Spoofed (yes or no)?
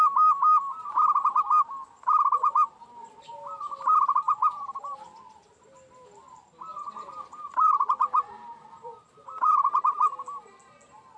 no